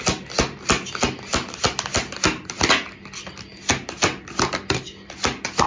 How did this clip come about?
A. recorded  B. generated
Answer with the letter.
A